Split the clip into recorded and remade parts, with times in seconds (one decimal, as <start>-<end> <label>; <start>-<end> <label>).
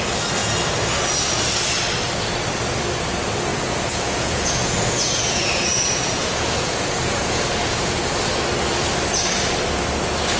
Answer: 0.0-3.5 recorded; 3.5-8.0 remade; 8.0-10.4 recorded